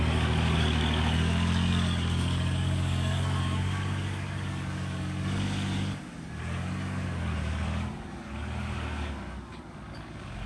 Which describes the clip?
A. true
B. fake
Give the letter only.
B